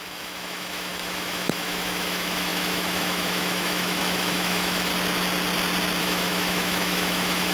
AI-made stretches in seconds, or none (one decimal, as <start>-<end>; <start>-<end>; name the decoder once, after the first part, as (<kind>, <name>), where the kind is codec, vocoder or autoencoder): 0.0-4.9 (autoencoder, DAC-VAE); 6.0-7.5